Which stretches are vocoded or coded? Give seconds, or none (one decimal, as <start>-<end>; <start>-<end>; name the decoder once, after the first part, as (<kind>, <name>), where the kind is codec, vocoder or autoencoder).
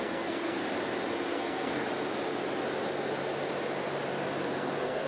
0.0-0.6 (codec, SNAC); 1.3-1.8; 4.5-5.1